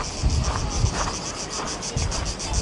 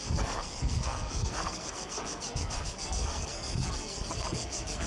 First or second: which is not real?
second